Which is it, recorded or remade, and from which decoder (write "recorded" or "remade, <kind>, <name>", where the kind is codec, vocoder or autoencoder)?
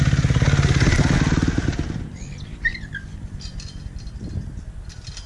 recorded